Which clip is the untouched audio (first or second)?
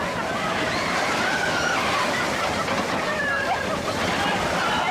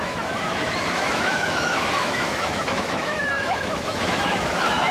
first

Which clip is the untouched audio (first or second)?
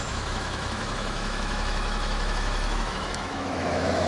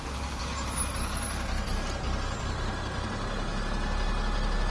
second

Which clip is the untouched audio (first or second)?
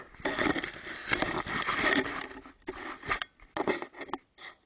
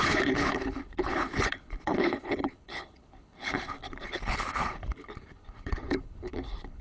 first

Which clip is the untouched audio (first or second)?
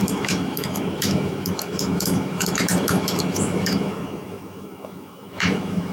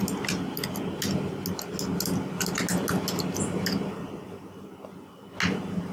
second